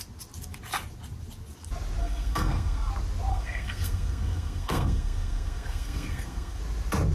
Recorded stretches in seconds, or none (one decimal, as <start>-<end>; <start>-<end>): 0.0-2.0; 2.9-3.3; 6.6-7.1